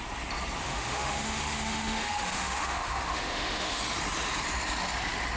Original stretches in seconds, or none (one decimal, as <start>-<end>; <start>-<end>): 0.0-0.6; 3.8-5.4